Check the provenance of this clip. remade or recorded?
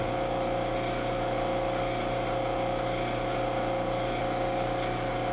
recorded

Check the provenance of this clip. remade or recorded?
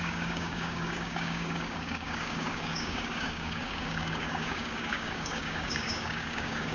remade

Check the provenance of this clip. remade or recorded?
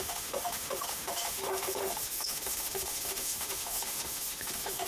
remade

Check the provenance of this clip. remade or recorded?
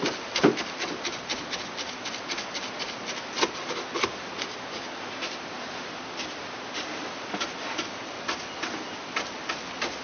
recorded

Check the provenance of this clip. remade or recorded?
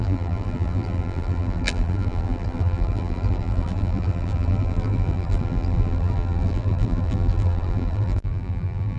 remade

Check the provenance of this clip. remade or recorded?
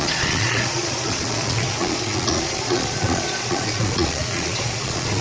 remade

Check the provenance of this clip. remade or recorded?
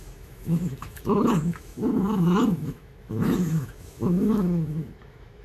remade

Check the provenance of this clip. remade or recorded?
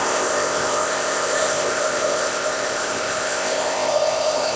remade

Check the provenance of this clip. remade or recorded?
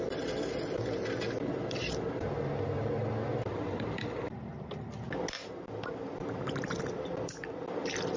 recorded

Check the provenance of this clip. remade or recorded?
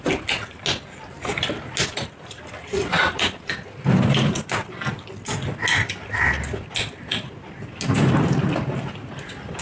recorded